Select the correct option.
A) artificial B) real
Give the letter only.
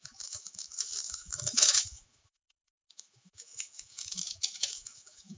A